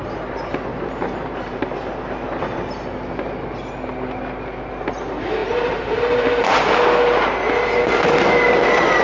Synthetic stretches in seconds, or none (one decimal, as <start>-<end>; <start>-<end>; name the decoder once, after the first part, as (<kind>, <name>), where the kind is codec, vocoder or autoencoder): 0.7-2.6 (vocoder, BigVGAN v2); 5.4-6.8